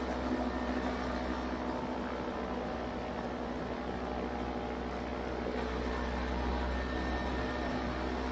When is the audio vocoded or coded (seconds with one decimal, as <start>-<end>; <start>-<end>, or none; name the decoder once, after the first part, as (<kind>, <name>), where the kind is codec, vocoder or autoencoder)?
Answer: none

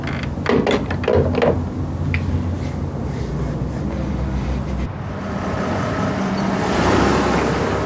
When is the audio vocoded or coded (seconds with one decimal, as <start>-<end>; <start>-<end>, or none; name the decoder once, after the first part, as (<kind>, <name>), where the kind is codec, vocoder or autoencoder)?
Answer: none